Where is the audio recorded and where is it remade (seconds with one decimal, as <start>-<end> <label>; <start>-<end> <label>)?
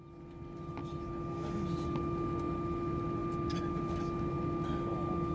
0.0-5.3 recorded